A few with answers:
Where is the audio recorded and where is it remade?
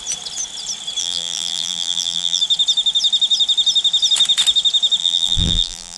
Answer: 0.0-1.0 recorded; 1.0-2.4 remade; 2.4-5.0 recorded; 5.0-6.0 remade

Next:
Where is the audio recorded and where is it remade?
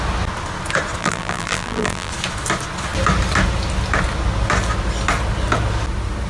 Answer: 0.0-1.0 recorded; 1.0-2.1 remade; 2.1-6.3 recorded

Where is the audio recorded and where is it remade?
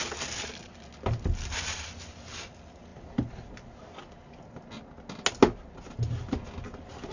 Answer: 0.0-0.8 remade; 0.8-7.1 recorded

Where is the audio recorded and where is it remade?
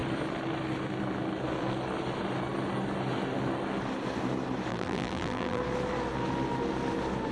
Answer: 0.0-4.7 recorded; 4.7-5.6 remade; 5.6-7.3 recorded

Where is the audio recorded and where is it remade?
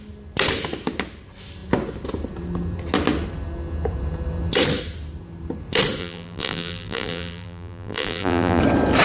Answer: 0.0-6.0 recorded; 6.0-8.6 remade; 8.6-9.0 recorded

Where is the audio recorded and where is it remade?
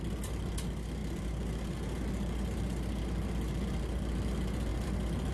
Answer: 0.0-4.7 recorded; 4.7-5.3 remade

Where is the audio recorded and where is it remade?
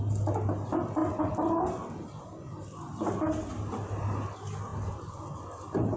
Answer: 0.0-6.0 recorded